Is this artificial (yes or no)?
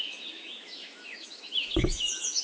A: yes